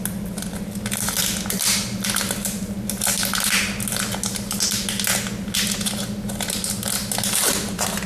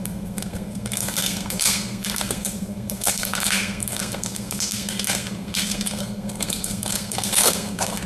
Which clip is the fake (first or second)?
second